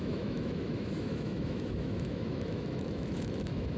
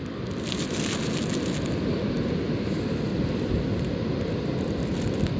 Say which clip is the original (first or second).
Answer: second